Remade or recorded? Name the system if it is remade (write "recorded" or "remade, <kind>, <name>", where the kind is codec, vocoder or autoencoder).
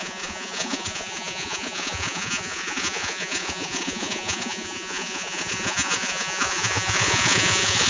remade, vocoder, Vocos